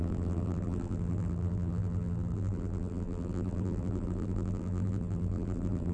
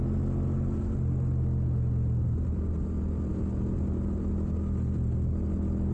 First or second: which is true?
second